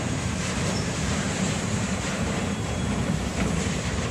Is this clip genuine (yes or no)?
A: no